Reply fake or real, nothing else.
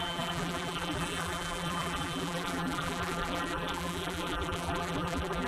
fake